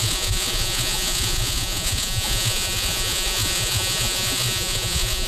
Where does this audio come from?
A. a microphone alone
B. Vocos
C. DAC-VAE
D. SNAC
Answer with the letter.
B